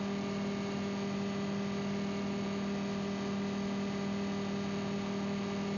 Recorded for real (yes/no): yes